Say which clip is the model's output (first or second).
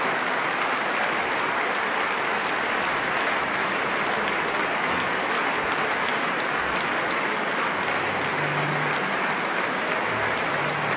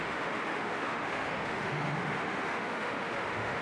second